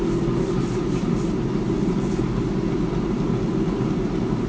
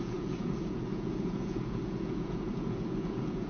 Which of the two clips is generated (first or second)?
second